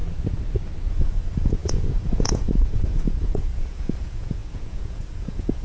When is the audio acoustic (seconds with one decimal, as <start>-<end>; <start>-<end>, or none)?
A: 0.0-0.9